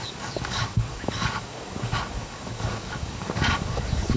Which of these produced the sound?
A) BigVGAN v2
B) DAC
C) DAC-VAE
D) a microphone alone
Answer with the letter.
B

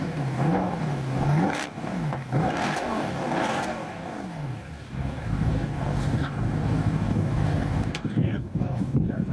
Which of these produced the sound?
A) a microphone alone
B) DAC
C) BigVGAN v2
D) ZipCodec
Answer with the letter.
B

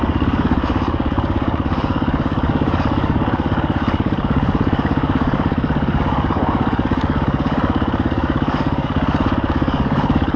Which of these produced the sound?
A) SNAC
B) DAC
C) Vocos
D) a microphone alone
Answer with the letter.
B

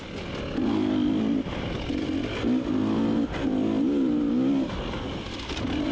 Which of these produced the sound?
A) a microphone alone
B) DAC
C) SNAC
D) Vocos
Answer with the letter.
A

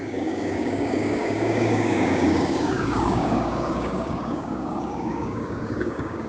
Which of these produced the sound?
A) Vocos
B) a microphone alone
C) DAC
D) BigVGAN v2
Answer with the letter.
C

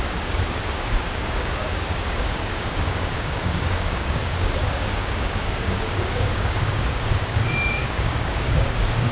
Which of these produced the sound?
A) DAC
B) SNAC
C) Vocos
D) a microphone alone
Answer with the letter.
A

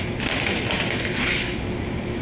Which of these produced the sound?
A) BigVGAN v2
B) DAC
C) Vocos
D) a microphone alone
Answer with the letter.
D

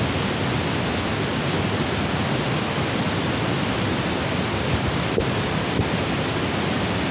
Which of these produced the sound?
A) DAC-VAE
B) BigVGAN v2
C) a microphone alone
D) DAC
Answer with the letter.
C